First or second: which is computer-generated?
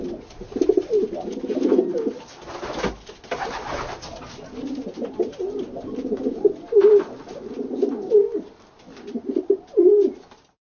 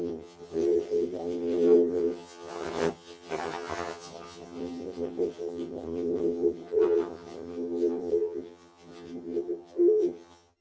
second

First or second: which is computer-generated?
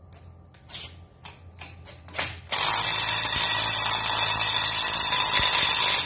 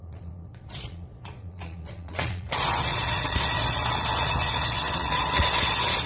second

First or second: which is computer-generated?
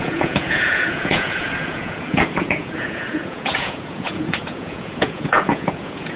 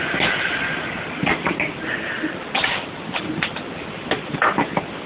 first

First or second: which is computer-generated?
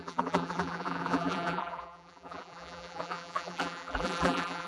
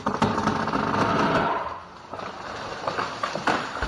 first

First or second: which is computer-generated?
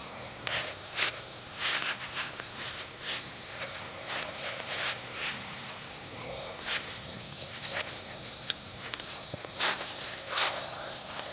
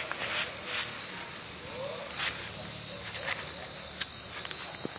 first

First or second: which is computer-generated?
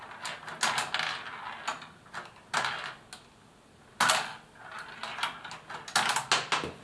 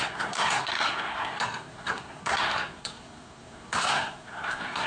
second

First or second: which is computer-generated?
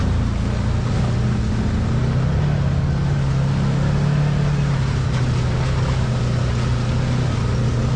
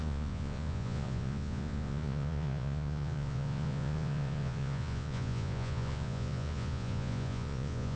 second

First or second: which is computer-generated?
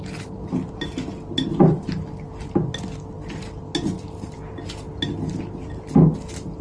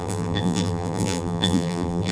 second